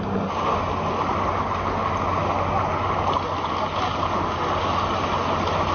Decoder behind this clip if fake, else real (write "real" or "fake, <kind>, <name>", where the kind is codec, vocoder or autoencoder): real